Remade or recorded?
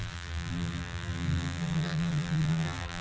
remade